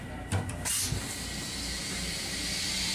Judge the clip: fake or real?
real